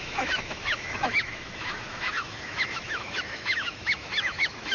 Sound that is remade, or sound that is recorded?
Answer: remade